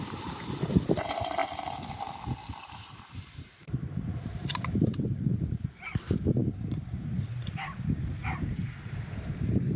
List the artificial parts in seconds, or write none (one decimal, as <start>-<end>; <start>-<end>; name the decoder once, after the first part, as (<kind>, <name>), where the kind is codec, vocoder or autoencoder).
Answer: 0.0-1.4 (vocoder, BigVGAN v2); 2.6-9.8